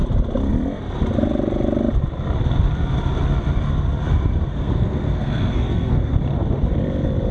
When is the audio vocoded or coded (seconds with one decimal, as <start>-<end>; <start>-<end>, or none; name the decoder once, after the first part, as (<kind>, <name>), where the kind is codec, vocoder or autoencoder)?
4.5-6.1 (codec, SNAC)